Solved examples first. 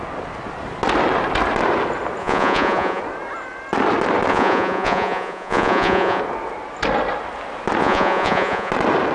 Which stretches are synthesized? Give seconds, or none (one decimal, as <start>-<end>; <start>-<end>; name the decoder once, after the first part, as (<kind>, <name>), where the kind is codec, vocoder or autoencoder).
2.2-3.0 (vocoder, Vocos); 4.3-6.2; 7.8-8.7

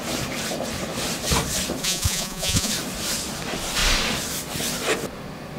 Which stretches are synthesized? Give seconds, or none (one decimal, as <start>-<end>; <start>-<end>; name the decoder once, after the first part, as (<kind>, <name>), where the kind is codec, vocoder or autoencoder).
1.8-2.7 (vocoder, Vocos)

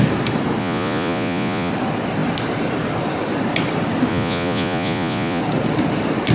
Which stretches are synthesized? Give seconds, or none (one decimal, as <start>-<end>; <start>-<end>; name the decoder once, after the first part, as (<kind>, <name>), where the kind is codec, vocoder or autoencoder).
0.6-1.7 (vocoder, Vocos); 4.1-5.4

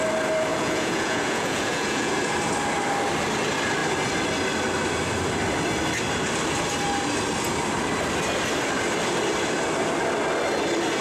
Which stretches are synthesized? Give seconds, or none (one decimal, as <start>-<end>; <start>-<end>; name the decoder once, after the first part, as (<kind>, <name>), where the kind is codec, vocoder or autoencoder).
0.5-2.1 (vocoder, Vocos)

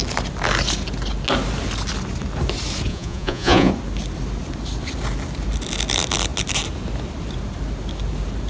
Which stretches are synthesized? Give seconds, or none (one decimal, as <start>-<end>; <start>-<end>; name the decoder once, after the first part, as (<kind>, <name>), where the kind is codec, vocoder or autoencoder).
2.9-3.7 (vocoder, Vocos)